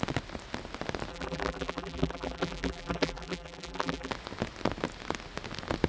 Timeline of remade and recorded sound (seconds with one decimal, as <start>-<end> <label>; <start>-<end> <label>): 0.0-1.1 recorded; 1.1-4.1 remade; 4.1-5.9 recorded